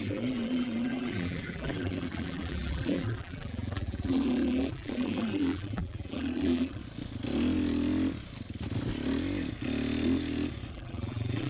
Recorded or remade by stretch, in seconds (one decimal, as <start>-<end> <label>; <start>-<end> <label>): 0.0-6.8 remade; 6.8-10.7 recorded; 10.7-11.5 remade

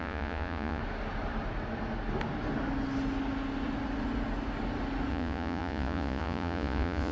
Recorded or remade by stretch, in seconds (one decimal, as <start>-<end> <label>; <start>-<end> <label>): 0.0-0.8 remade; 0.8-5.1 recorded; 5.1-7.1 remade

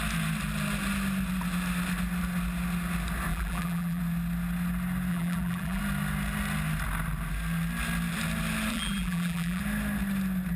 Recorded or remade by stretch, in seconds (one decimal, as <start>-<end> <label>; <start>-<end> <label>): 0.0-3.3 recorded; 3.3-4.0 remade; 4.0-5.1 recorded; 5.1-5.8 remade; 5.8-8.7 recorded; 8.7-9.6 remade; 9.6-10.6 recorded

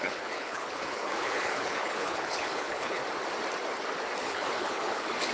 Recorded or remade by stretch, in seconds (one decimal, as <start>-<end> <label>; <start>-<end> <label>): 0.0-3.0 remade; 3.0-4.2 recorded; 4.2-5.3 remade